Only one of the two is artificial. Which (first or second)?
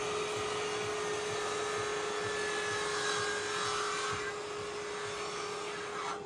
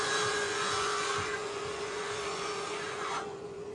second